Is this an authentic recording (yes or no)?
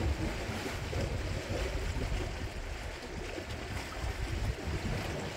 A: yes